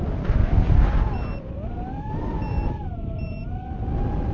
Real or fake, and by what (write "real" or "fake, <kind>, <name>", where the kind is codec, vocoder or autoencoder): real